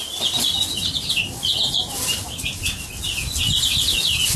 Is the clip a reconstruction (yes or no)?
no